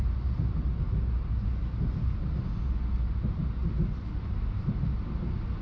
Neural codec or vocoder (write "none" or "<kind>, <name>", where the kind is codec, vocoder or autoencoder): none